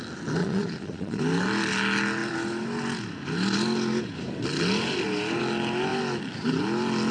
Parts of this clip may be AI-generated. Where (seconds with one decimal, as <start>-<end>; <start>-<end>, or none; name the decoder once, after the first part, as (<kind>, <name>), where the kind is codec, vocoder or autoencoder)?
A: 0.4-1.2 (vocoder, Vocos)